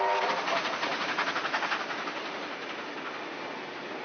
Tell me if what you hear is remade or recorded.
recorded